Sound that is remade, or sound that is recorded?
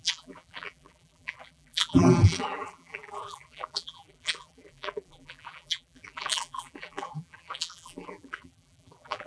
remade